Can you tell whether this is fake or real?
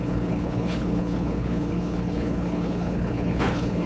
fake